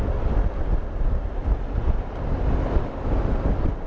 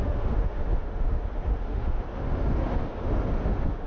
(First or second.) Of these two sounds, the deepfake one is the second